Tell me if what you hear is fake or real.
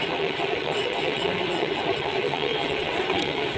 fake